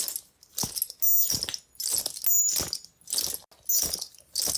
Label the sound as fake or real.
real